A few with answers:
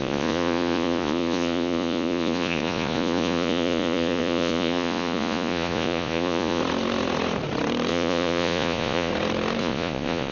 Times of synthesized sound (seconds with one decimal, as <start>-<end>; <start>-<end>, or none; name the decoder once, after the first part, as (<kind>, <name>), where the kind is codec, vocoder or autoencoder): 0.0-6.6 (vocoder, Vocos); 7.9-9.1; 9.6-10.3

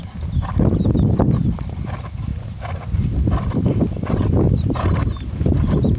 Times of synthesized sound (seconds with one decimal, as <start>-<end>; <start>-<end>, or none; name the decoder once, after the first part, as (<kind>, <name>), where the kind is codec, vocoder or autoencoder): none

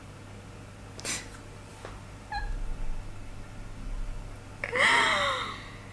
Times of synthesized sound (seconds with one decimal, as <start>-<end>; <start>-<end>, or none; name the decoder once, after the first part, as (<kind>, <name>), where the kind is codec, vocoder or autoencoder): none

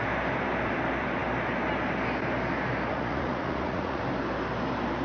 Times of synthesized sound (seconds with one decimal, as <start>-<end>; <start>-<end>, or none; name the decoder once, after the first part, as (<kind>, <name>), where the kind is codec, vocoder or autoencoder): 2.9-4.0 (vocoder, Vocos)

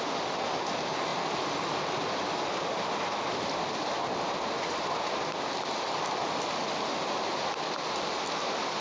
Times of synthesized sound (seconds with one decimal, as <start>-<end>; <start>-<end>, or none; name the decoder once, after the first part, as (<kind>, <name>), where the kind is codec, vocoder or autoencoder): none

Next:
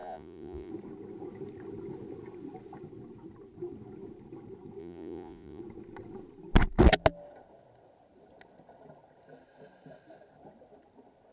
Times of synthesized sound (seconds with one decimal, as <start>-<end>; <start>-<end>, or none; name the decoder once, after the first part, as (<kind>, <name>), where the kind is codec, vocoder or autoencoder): 0.0-0.7 (vocoder, Vocos); 4.8-5.6

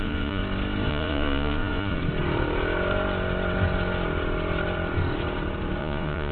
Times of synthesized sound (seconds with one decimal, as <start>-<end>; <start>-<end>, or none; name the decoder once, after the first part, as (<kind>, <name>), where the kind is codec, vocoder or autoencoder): 0.0-0.4 (vocoder, Vocos); 0.9-2.0; 5.8-6.3

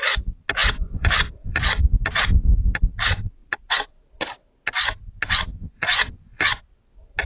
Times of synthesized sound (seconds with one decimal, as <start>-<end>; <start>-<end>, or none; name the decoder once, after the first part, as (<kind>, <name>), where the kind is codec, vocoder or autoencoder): 0.6-1.6 (vocoder, Vocos); 5.5-6.5